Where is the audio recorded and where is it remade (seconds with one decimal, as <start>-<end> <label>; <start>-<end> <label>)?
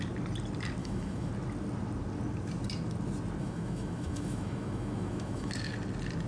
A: 0.0-0.8 recorded; 0.8-1.3 remade; 1.3-3.4 recorded; 3.4-5.5 remade; 5.5-6.3 recorded